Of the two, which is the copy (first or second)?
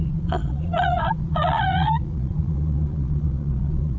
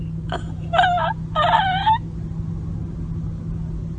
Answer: first